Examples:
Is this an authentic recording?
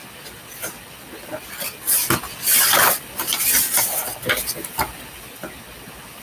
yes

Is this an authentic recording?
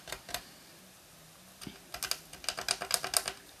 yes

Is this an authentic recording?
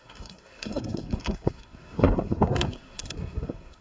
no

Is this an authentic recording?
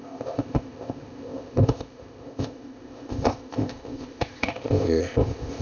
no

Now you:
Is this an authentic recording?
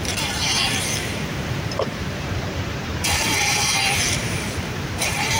no